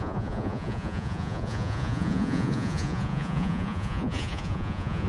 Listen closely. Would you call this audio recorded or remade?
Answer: remade